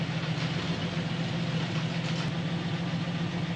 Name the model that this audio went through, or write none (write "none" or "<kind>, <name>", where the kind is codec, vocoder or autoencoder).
none